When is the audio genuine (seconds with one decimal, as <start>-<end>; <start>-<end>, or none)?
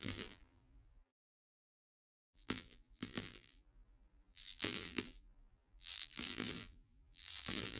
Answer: none